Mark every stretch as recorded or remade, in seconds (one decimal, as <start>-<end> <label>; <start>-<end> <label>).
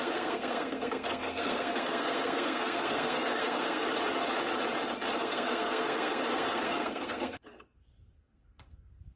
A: 0.0-3.8 remade; 3.8-5.2 recorded; 5.2-9.2 remade